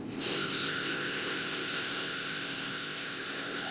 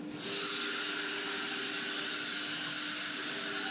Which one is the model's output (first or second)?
first